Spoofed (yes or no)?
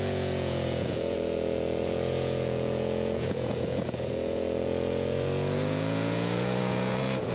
yes